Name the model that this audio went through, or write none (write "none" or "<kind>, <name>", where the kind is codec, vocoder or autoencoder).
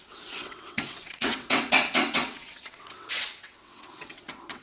vocoder, WaveNeXt